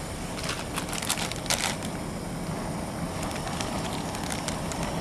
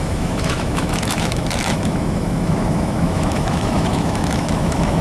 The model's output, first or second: second